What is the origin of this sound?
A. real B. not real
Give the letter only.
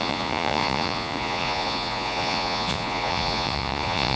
B